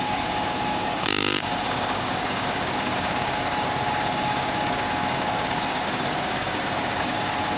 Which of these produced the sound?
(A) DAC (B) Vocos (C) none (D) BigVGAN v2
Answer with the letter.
A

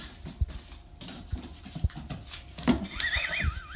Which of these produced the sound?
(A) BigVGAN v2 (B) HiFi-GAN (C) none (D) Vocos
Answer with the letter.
C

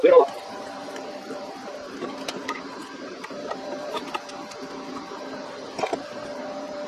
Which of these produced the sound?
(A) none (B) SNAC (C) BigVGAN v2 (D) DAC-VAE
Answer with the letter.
C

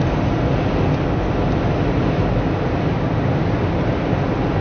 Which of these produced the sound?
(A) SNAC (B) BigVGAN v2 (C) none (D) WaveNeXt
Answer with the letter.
C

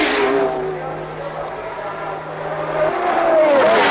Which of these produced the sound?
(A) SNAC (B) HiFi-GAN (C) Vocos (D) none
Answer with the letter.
D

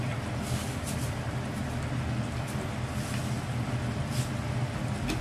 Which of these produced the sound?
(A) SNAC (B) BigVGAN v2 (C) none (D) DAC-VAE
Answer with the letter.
C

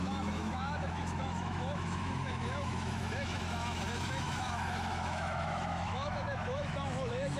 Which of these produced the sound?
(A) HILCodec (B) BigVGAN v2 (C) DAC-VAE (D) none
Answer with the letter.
C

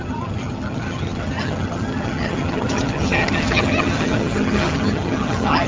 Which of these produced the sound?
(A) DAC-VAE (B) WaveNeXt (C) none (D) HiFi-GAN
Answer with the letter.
D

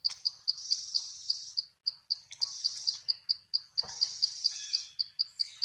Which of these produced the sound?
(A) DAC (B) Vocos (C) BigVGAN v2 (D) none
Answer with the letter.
D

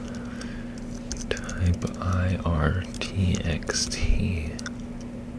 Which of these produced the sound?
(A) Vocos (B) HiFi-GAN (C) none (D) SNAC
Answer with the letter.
C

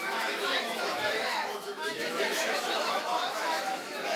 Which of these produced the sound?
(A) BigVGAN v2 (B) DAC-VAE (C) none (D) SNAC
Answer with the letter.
B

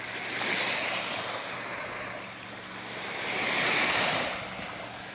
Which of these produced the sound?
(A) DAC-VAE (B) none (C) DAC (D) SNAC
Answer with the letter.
B